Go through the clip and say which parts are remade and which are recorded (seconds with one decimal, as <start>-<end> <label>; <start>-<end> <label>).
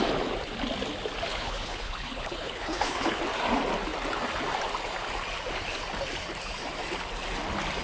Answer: 0.0-1.3 recorded; 1.3-3.2 remade; 3.2-7.8 recorded